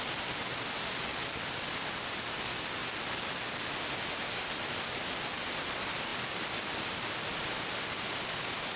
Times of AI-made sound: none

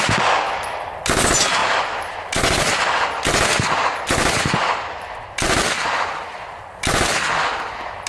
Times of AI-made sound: none

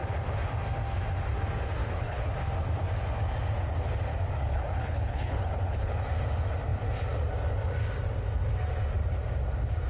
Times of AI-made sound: 1.8-2.3 (codec, HILCodec); 4.5-6.0

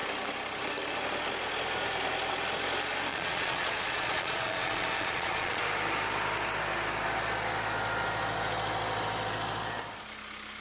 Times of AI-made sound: 3.1-5.6 (vocoder, Vocos)

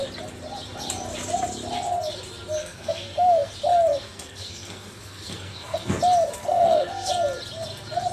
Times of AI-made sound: 2.6-3.5 (codec, SNAC); 3.9-6.0; 6.4-7.1